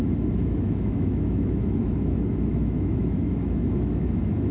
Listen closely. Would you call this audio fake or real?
fake